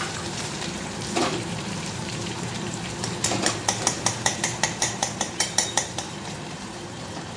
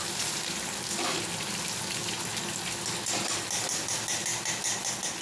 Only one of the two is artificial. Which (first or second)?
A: first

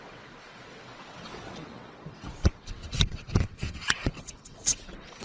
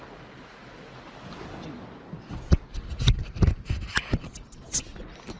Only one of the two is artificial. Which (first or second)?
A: first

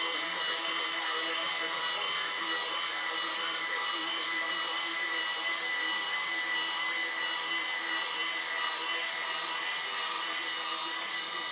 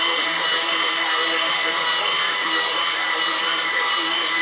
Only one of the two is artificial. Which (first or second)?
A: second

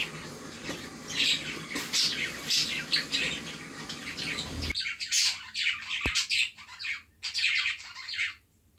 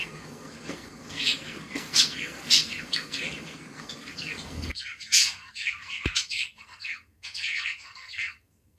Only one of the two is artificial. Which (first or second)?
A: second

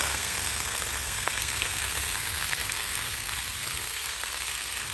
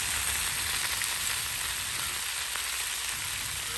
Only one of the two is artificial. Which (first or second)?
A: first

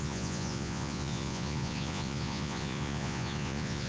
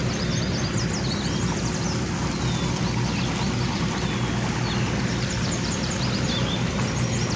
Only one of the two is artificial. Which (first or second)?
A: first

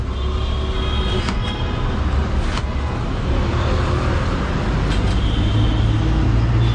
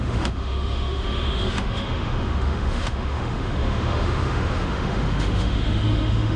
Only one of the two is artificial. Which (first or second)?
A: second